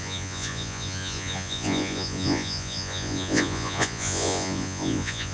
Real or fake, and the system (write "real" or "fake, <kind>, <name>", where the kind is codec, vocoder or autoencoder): fake, vocoder, Vocos